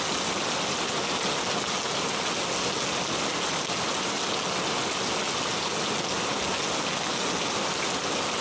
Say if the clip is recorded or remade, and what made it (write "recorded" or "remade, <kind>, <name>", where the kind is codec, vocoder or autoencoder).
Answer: recorded